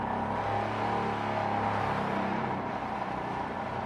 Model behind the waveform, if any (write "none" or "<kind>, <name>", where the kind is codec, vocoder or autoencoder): none